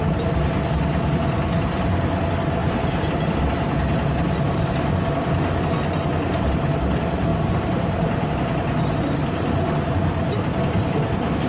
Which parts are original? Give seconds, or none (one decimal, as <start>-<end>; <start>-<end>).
0.0-11.5

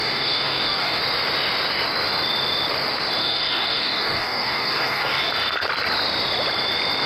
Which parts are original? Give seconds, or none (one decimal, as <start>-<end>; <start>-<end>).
1.0-3.2; 5.3-7.1

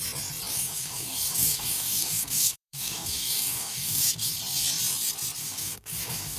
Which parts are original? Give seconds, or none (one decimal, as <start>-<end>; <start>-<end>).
0.0-0.5; 4.3-5.4

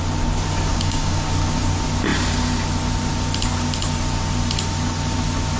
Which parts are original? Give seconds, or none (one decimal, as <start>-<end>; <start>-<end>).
0.0-0.7; 1.3-5.6

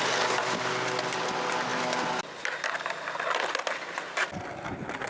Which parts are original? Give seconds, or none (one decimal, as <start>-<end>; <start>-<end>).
0.0-5.1

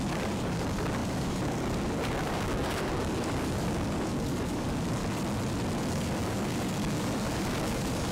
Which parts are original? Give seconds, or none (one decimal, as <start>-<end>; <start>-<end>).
5.0-5.9